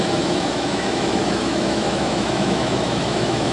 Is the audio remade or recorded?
remade